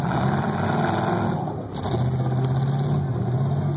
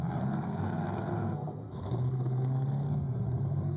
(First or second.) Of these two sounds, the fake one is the second